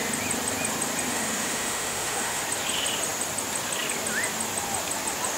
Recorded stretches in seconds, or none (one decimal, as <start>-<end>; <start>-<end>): 0.0-1.1; 2.4-5.4

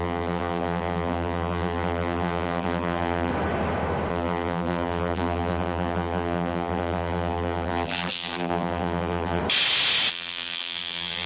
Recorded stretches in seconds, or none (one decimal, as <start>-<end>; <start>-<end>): 3.3-4.1; 9.4-10.1

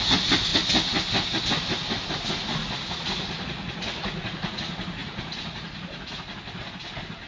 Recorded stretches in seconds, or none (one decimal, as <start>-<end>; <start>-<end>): 0.0-2.6; 4.6-5.0; 6.2-7.3

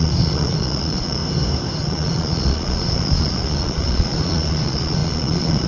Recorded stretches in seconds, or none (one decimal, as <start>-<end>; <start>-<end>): 1.2-1.8